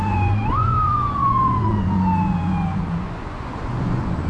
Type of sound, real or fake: fake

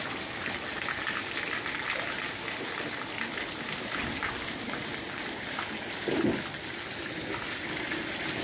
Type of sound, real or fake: real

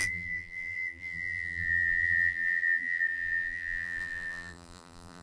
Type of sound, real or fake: fake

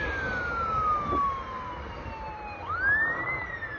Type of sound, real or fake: real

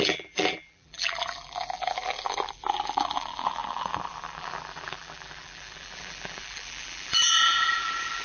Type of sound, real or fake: fake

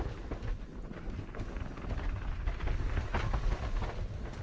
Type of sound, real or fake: real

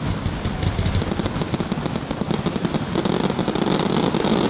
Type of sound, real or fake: real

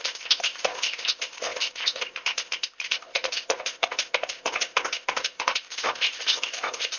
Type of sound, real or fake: fake